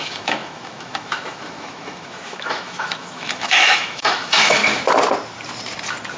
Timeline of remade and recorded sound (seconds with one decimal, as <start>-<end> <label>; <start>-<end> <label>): 0.0-4.6 remade; 4.6-6.2 recorded